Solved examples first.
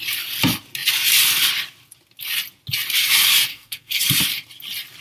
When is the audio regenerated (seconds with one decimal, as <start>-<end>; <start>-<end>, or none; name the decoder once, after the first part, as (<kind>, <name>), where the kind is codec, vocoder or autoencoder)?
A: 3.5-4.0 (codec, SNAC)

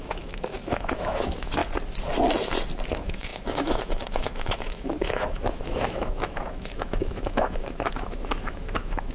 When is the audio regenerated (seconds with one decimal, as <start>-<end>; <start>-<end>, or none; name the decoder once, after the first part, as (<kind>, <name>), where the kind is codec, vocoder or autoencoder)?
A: 0.0-1.6 (autoencoder, DAC-VAE); 2.9-9.1

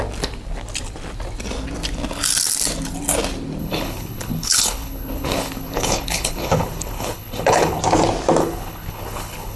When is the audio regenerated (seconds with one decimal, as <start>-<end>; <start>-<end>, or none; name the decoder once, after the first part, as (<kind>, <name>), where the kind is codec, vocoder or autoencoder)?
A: 3.6-7.8 (codec, HILCodec); 8.4-9.6

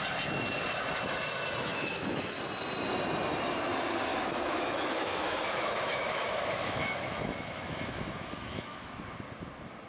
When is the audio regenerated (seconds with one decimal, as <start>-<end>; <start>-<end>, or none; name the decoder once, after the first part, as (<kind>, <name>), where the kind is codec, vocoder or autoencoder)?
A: 1.7-2.4 (autoencoder, DAC-VAE); 4.1-8.9